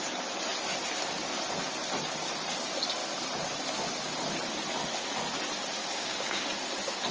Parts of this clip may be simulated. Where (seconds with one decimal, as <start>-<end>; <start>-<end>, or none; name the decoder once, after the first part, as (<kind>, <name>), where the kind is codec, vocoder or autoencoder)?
5.8-6.5 (codec, DAC)